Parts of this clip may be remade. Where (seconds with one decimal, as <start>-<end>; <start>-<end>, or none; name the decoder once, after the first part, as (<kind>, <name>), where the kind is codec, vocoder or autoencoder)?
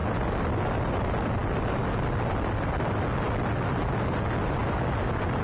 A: none